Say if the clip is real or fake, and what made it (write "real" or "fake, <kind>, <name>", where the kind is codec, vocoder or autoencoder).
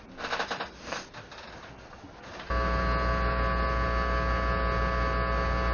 real